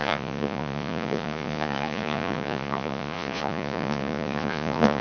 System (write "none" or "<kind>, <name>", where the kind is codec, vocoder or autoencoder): vocoder, Vocos